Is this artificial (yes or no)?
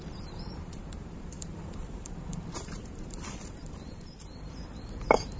yes